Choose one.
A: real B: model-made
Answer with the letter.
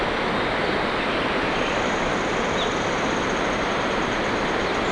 A